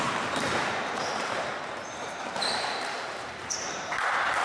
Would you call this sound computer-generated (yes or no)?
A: yes